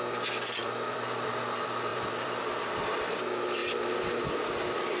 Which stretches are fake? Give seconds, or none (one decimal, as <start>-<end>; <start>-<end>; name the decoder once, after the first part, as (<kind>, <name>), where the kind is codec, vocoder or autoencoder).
0.6-1.3 (vocoder, BigVGAN v2); 1.9-3.2